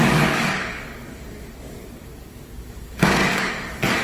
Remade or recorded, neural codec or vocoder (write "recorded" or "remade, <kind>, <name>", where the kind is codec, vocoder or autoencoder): remade, codec, DAC